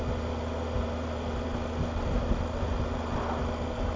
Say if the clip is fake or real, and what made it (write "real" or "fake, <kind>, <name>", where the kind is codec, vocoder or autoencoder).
real